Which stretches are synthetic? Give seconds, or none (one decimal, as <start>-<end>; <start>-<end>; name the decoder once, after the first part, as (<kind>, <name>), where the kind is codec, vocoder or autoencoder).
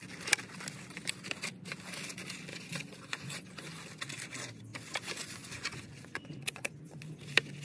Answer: 2.5-3.7 (vocoder, Vocos); 4.7-7.0